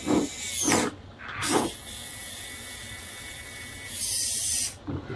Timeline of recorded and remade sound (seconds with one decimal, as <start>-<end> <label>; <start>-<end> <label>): 0.0-5.2 recorded